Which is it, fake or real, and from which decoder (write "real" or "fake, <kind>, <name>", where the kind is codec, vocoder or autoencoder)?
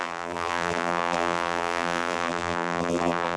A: fake, vocoder, BigVGAN v2